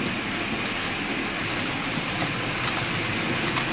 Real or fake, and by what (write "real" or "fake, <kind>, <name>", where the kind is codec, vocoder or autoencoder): real